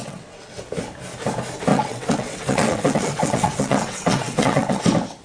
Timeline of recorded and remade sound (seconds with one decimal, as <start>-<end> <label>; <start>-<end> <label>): 0.0-0.6 remade; 0.6-1.7 recorded; 1.7-4.8 remade; 4.8-5.2 recorded